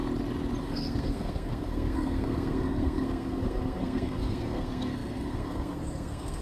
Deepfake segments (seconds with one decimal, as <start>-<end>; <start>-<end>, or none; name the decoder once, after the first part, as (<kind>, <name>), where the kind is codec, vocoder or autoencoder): 0.6-6.4 (codec, SNAC)